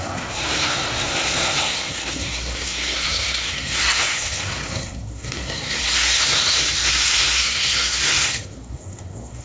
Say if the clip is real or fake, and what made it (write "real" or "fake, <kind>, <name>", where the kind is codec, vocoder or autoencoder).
fake, codec, SNAC